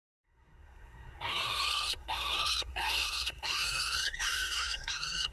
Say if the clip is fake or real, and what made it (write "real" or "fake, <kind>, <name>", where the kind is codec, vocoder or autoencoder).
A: fake, codec, SNAC